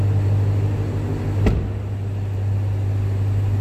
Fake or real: real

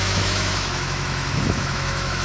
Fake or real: fake